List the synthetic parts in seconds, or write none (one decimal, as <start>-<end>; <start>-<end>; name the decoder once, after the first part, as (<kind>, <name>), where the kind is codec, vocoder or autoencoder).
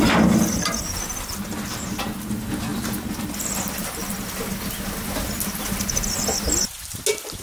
none